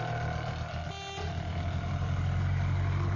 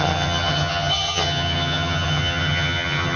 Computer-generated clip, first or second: second